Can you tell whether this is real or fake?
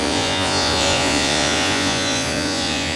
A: fake